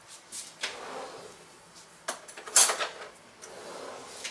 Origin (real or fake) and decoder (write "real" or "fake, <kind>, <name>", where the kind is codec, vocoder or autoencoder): real